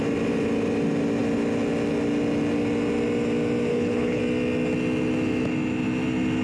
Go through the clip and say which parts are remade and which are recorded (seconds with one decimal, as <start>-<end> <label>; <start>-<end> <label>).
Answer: 0.0-3.7 recorded; 3.7-4.2 remade; 4.2-6.4 recorded